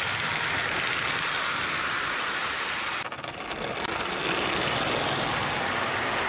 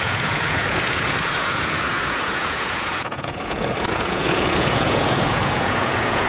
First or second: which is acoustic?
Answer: first